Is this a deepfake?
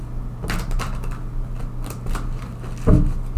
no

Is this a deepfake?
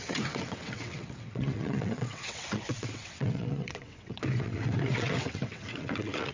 yes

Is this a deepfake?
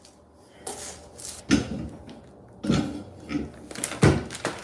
no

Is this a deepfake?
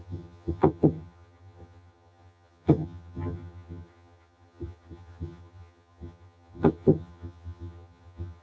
yes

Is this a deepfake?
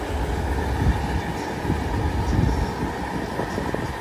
no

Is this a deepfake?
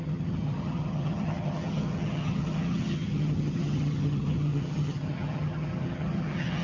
yes